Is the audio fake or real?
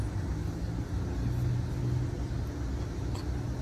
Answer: real